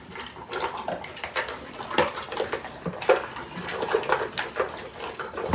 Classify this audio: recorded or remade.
recorded